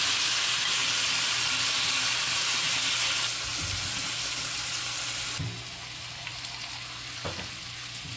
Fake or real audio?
real